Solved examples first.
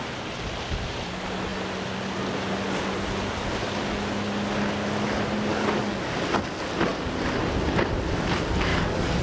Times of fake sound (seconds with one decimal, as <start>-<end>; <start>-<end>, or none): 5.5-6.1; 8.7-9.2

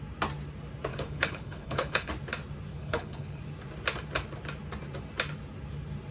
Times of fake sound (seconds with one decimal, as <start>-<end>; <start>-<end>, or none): 0.9-2.1; 2.7-3.4

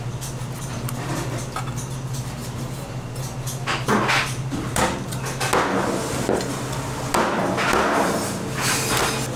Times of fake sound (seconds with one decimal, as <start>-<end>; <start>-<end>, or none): 2.4-2.9

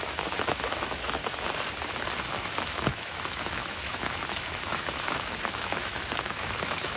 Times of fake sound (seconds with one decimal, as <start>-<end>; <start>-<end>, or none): 0.0-1.2; 2.2-7.0

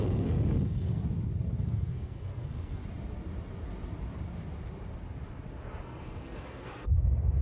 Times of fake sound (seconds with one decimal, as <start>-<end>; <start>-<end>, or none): 0.0-1.0; 1.6-2.8; 5.8-7.4